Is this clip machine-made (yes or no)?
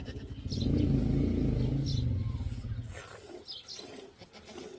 no